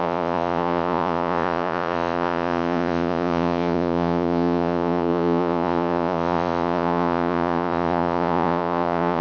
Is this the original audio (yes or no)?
no